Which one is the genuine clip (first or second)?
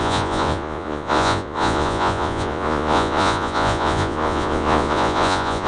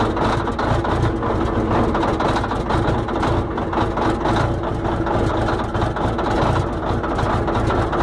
second